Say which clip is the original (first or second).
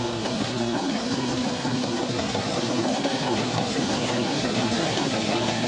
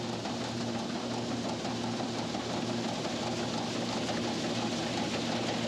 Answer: second